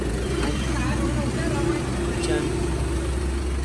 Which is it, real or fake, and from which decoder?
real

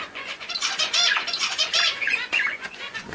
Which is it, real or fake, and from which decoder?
fake, vocoder, Vocos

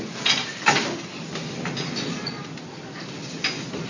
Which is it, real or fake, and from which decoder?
real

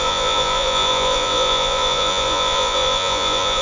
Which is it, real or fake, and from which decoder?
fake, vocoder, Vocos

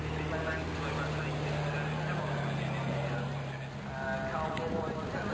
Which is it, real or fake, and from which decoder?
real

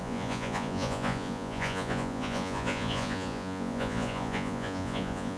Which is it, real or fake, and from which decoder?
fake, vocoder, Vocos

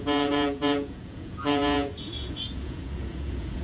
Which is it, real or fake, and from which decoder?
fake, vocoder, Vocos